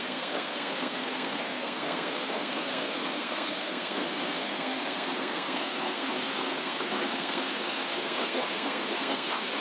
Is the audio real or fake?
fake